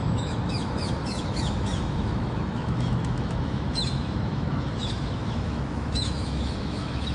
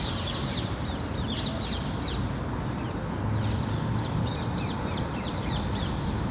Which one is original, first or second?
second